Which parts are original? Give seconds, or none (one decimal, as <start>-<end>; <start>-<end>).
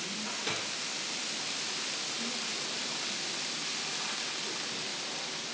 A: 0.0-5.5